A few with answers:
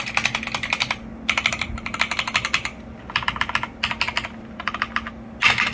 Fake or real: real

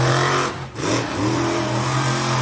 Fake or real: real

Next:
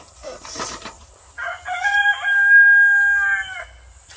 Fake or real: real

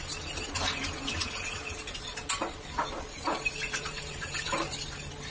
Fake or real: real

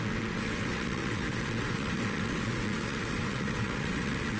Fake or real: fake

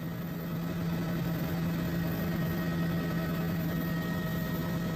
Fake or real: real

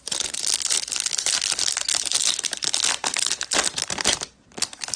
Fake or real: real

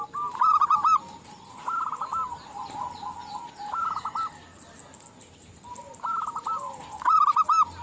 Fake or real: real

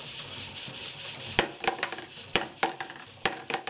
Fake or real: fake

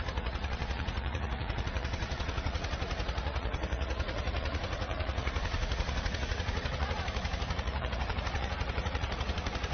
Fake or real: fake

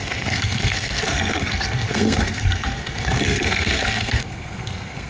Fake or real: fake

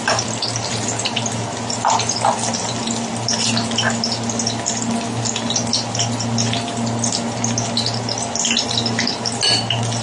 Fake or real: real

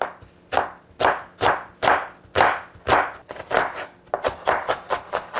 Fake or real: real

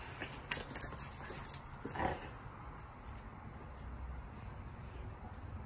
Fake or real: real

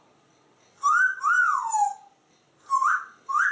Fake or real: real